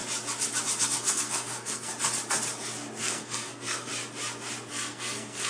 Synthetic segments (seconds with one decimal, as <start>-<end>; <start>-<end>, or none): 0.8-1.9; 3.0-3.9; 4.7-5.5